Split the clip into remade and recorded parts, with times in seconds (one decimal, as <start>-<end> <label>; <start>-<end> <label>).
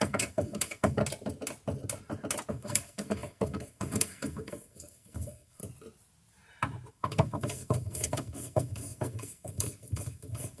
0.0-1.0 remade; 1.0-2.5 recorded; 2.5-5.6 remade; 5.6-6.9 recorded; 6.9-10.6 remade